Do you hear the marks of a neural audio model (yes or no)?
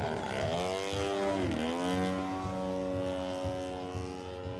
no